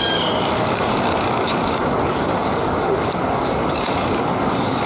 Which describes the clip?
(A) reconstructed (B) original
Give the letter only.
A